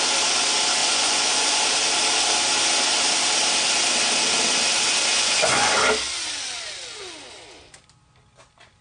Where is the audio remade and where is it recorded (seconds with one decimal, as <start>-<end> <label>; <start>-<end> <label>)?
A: 0.0-0.8 recorded; 0.8-1.6 remade; 1.6-5.1 recorded; 5.1-5.7 remade; 5.7-8.8 recorded